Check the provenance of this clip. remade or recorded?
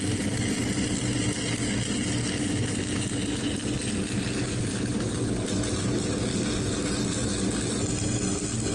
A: recorded